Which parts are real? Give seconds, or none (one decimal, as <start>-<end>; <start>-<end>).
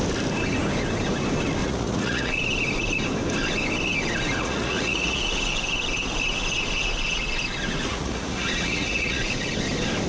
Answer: 0.0-1.6; 2.3-4.4; 5.2-7.9; 9.2-10.1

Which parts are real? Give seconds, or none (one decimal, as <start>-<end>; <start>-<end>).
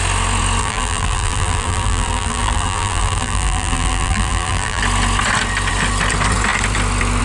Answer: 0.0-0.6; 4.8-7.2